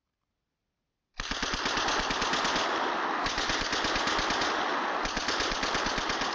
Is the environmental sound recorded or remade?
recorded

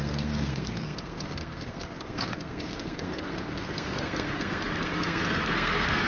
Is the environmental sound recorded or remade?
remade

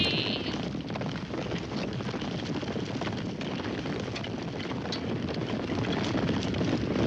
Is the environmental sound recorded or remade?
recorded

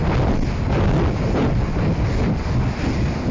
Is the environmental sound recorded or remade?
recorded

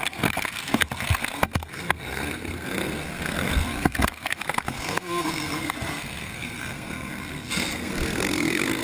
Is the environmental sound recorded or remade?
remade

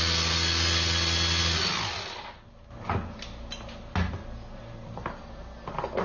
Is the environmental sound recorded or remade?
recorded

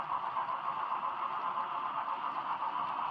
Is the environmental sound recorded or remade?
recorded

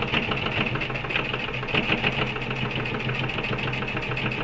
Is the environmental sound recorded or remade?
recorded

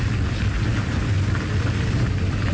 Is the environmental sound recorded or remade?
recorded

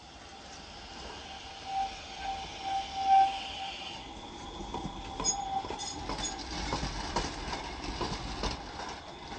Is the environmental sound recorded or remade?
recorded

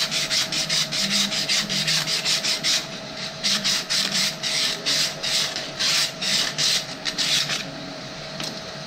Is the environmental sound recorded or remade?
remade